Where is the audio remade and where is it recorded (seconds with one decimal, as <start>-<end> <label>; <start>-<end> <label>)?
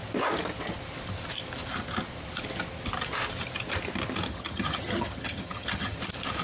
0.0-4.3 recorded; 4.3-6.0 remade; 6.0-6.4 recorded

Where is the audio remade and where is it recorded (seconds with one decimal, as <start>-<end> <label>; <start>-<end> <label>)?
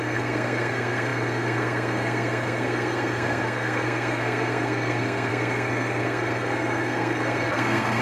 0.0-8.0 remade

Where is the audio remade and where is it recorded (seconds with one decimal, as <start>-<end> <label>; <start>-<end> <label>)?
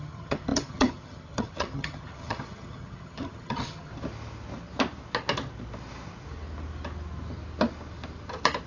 0.0-3.9 remade; 3.9-8.7 recorded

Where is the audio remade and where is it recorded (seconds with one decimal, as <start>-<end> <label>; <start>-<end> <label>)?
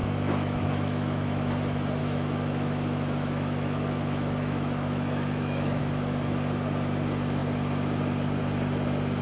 0.0-1.5 remade; 1.5-2.0 recorded; 2.0-5.8 remade; 5.8-9.2 recorded